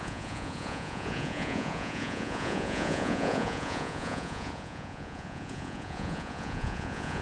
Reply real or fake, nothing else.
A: fake